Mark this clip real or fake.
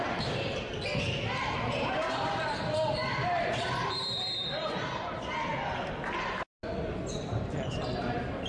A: real